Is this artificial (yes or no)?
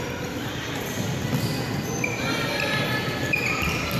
no